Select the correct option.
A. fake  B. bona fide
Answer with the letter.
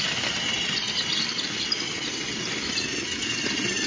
B